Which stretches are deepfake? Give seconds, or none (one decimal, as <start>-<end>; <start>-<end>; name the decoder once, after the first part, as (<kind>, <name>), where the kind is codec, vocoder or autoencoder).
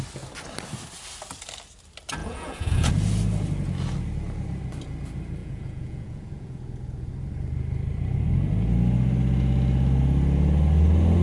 2.2-2.9 (vocoder, Vocos); 5.4-7.1